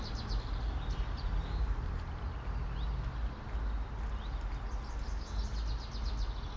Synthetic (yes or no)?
no